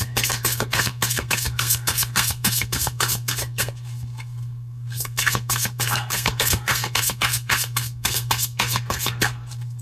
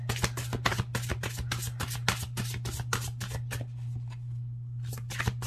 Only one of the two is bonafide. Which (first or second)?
second